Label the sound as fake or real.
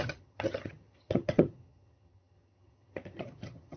fake